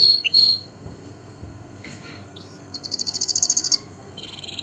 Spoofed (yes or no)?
yes